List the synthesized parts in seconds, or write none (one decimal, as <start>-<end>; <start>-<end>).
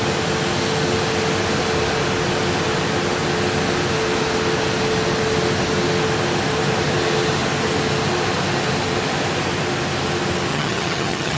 10.5-11.4